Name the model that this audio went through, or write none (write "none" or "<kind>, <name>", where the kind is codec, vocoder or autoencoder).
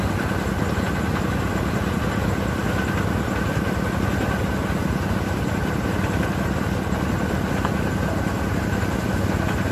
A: none